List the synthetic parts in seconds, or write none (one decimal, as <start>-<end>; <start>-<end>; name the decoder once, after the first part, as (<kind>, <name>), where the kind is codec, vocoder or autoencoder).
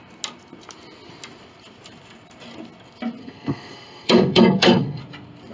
3.2-5.0 (codec, SNAC)